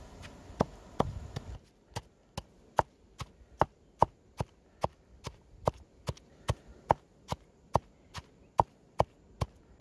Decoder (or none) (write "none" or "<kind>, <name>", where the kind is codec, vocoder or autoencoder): none